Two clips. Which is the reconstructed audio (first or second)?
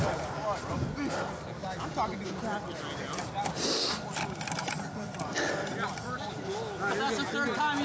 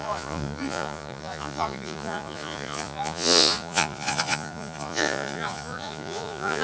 second